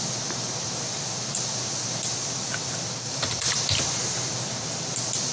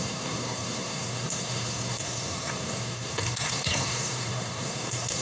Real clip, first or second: first